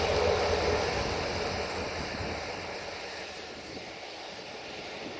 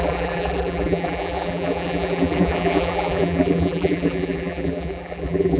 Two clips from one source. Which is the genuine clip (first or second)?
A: first